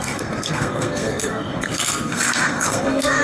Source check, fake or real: fake